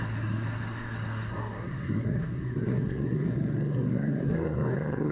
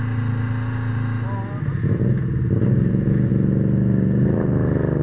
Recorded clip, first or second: second